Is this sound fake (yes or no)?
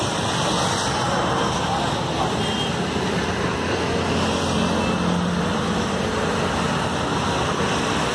no